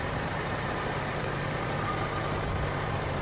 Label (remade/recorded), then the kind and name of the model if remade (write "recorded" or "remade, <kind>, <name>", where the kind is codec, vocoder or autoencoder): remade, vocoder, BigVGAN v2